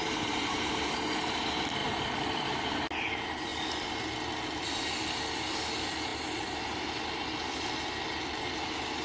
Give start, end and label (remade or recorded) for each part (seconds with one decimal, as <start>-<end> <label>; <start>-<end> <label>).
0.0-9.0 recorded